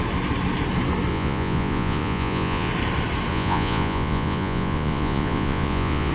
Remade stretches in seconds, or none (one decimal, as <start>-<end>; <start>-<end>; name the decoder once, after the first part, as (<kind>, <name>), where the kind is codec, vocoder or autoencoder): 1.1-2.7 (vocoder, Vocos); 3.3-6.1